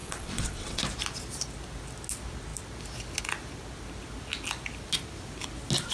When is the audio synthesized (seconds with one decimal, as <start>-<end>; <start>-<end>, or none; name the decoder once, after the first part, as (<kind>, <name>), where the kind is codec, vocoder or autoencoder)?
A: 0.0-0.8 (vocoder, WaveNeXt)